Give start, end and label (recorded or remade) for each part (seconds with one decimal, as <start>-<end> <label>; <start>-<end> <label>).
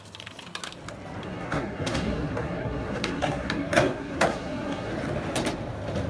0.0-1.2 recorded; 1.2-4.9 remade; 4.9-6.1 recorded